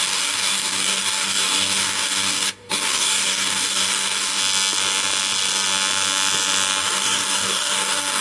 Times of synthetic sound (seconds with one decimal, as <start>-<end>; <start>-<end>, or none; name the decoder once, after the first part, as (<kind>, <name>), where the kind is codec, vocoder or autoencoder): 0.0-4.4 (codec, DAC); 6.8-8.2